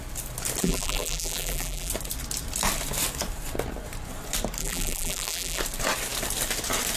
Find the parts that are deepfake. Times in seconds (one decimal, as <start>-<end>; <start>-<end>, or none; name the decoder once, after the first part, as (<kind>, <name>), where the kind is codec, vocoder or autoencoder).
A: 0.6-1.9 (vocoder, BigVGAN v2); 4.6-5.6